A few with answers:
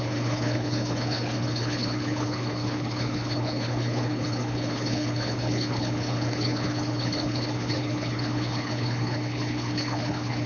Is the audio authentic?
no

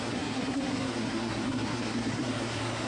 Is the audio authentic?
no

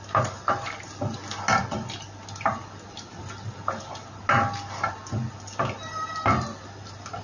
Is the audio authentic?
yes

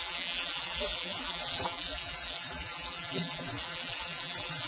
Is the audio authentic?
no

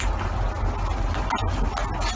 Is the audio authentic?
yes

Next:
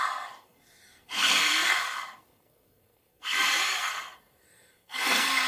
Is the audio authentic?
no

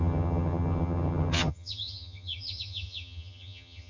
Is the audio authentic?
no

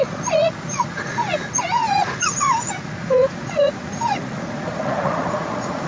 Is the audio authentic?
no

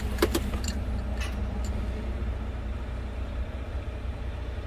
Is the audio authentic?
yes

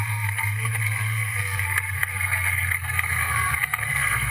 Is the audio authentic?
no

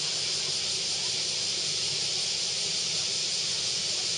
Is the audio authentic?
yes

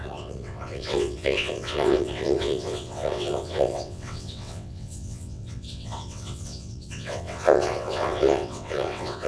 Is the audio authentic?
no